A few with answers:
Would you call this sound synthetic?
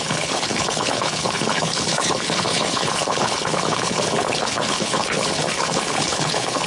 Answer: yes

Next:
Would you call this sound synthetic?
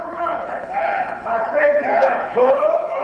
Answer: yes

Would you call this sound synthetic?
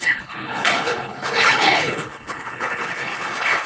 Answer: yes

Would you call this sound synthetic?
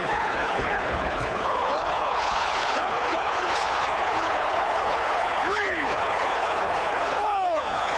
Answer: yes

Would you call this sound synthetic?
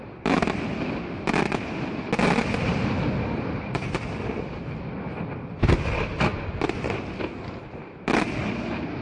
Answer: no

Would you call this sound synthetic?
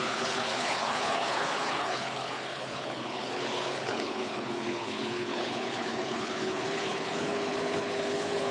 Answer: yes